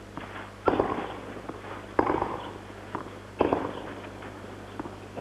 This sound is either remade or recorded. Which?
recorded